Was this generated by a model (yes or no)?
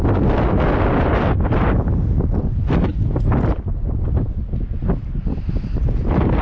no